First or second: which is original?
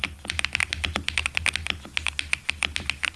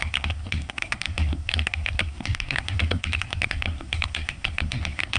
first